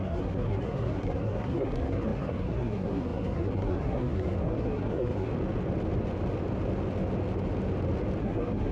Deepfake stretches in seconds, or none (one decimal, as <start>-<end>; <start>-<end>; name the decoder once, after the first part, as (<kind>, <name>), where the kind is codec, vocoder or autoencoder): 0.0-5.3 (codec, SNAC); 8.2-8.7